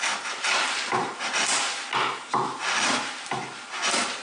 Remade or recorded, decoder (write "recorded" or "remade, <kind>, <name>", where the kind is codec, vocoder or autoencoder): recorded